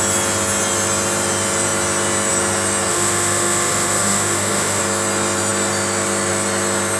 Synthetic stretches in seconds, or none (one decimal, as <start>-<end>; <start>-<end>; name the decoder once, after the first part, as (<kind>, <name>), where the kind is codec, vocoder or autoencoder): 2.9-4.8 (autoencoder, DAC-VAE)